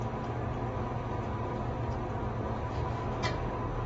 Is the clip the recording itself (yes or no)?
yes